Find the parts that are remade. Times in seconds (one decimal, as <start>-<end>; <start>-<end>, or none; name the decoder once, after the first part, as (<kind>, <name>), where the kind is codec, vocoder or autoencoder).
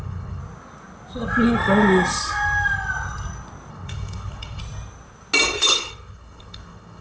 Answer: 0.0-0.4 (codec, HILCodec); 3.7-4.6; 5.6-7.0